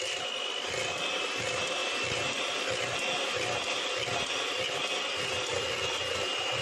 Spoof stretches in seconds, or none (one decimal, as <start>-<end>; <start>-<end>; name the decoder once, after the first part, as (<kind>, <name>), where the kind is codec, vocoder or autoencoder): none